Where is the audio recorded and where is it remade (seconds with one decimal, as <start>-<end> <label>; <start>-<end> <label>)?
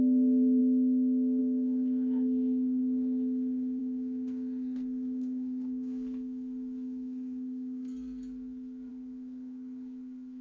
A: 0.0-0.6 remade; 0.6-1.4 recorded; 1.4-10.4 remade